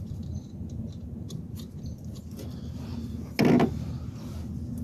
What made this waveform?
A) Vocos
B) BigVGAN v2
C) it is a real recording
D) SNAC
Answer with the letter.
C